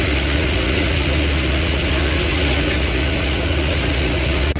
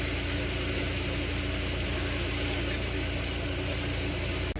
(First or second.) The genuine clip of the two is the second